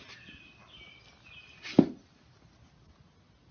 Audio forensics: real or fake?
real